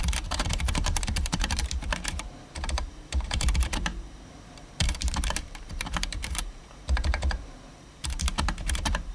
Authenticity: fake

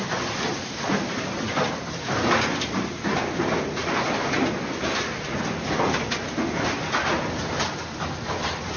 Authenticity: real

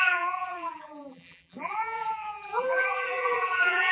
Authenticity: fake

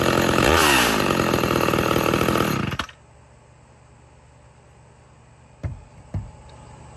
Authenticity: real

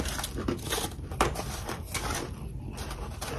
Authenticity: fake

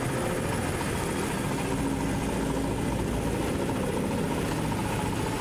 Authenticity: real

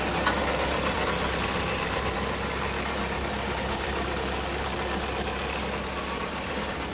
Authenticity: fake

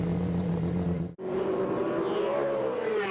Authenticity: fake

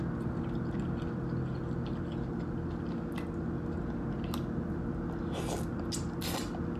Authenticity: real